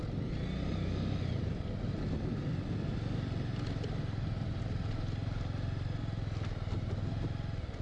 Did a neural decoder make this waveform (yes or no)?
no